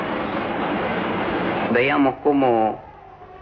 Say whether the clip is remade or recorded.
recorded